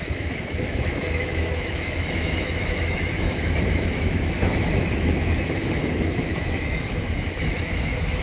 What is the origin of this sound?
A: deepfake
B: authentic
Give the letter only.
A